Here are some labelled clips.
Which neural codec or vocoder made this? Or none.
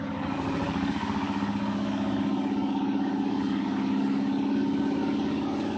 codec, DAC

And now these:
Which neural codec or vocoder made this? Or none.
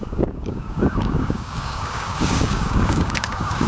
codec, DAC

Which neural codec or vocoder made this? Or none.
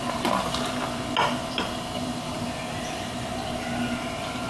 none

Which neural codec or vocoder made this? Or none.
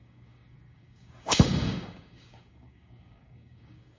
codec, DAC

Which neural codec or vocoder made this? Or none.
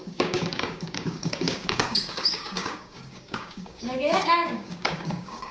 codec, DAC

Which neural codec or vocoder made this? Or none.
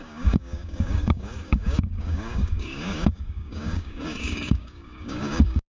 codec, DAC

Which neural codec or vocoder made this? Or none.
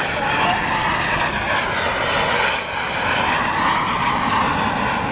none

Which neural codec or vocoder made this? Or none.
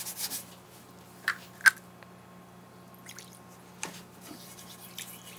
none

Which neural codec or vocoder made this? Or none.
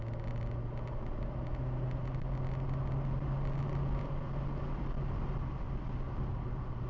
none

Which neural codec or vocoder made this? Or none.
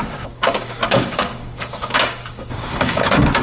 codec, DAC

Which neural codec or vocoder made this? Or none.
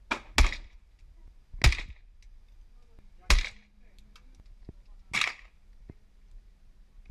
none